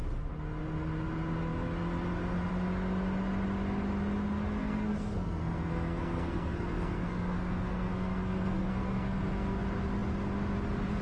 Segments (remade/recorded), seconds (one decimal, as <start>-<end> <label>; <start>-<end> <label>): 0.0-4.6 recorded; 4.6-9.6 remade; 9.6-11.0 recorded